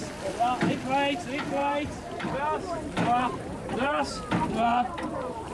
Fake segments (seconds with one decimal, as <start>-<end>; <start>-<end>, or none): 1.6-4.1; 4.7-5.5